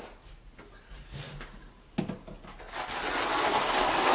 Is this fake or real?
real